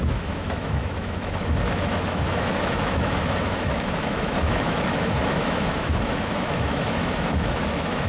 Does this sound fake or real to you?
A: fake